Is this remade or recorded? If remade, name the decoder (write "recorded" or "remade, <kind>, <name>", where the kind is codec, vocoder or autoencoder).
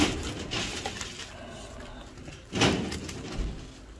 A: recorded